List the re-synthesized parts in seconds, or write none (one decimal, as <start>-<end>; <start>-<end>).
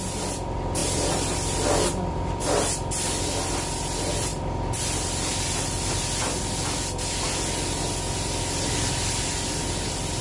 0.8-2.4